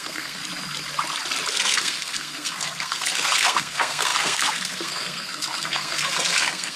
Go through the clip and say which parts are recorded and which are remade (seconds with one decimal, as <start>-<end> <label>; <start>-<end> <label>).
0.0-0.4 remade; 0.4-1.5 recorded; 1.5-6.8 remade

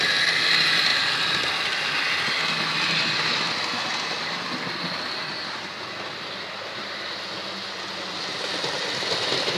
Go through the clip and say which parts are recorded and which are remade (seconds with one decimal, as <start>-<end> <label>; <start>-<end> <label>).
0.0-9.6 recorded

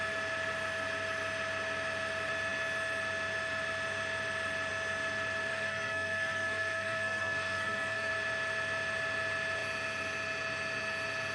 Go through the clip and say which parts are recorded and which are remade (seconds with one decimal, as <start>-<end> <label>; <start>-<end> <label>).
0.0-5.5 recorded; 5.5-8.1 remade; 8.1-11.3 recorded

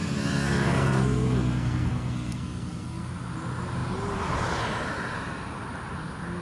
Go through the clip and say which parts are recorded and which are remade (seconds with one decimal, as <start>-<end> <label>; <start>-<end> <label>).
0.0-3.1 remade; 3.1-6.4 recorded